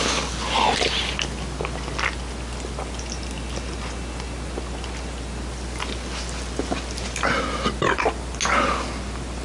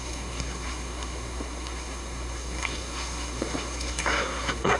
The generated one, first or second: second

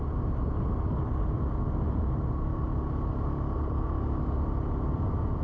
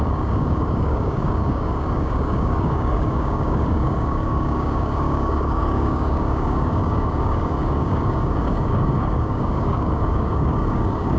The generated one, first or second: second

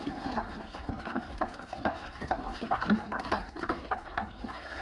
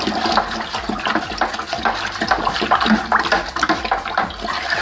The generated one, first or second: first